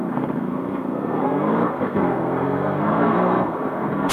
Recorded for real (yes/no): no